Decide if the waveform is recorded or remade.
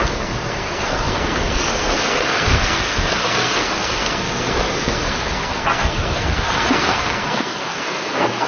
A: remade